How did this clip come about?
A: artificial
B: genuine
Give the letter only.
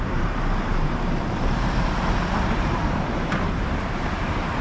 A